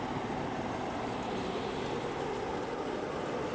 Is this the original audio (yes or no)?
yes